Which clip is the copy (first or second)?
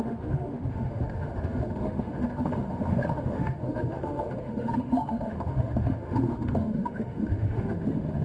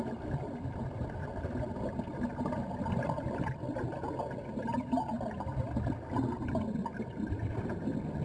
first